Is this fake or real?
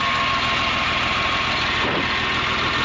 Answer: real